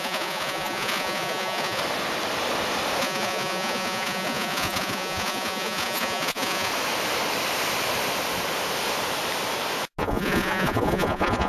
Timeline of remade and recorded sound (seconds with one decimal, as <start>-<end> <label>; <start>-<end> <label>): 0.0-1.8 remade; 1.8-3.0 recorded; 3.0-6.7 remade; 6.7-10.0 recorded; 10.0-11.5 remade